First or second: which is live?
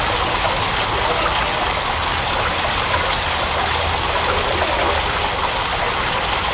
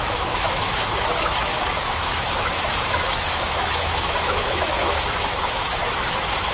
first